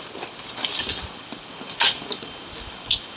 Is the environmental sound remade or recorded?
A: recorded